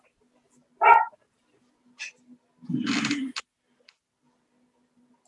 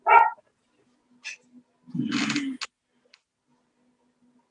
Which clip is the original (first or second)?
second